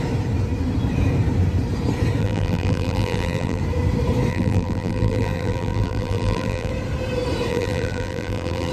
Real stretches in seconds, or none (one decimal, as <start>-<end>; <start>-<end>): 0.0-2.2; 3.6-4.3; 6.7-7.5

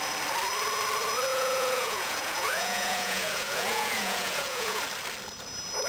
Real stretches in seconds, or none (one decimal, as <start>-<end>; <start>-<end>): 0.0-1.3; 4.8-5.9

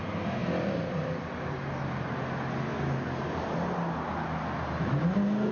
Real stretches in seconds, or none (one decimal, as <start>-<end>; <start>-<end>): 0.0-5.5

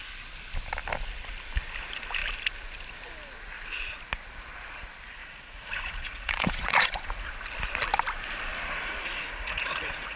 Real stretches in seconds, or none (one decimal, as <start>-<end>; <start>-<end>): 0.0-5.2; 7.3-8.5

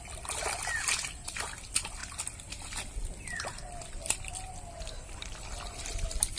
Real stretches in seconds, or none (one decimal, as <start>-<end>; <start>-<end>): 0.0-6.4